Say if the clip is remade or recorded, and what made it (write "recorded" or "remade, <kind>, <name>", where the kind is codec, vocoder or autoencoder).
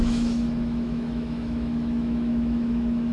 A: remade, autoencoder, DAC-VAE